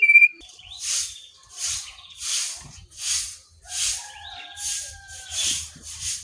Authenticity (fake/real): fake